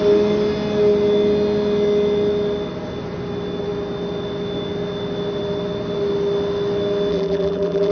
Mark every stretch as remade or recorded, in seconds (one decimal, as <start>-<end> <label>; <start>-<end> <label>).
0.0-7.1 recorded; 7.1-7.9 remade